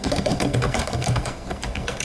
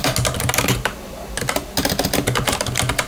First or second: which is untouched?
second